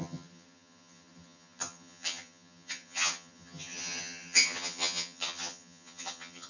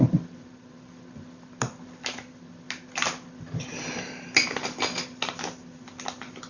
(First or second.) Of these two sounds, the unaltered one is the second